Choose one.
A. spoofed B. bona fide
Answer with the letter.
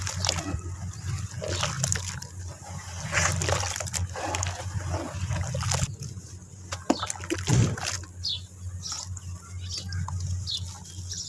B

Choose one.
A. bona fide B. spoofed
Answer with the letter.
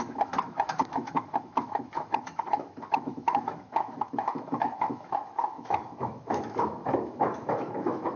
B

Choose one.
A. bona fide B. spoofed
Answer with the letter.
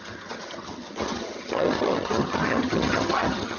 B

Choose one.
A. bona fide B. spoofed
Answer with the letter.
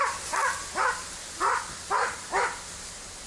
A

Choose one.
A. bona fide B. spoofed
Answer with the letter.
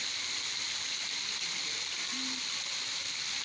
A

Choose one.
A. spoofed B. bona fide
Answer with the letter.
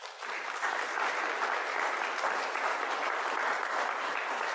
B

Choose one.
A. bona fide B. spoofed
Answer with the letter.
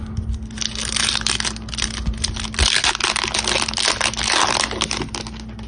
A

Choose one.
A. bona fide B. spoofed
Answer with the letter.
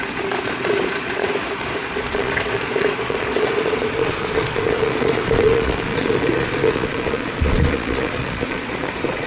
B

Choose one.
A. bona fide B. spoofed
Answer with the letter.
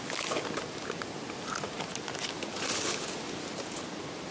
A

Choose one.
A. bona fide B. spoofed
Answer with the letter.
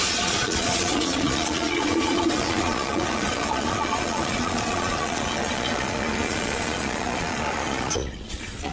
B